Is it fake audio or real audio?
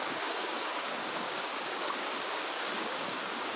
fake